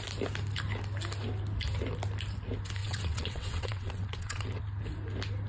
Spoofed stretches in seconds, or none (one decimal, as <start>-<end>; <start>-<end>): 2.8-4.6